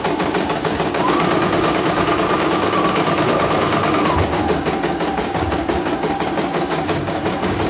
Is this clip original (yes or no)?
no